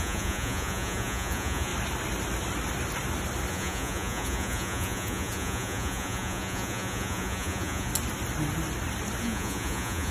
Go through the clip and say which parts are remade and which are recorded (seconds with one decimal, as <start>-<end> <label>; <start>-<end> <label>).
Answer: 0.0-1.7 remade; 1.7-3.5 recorded; 3.5-7.9 remade; 7.9-9.2 recorded; 9.2-10.1 remade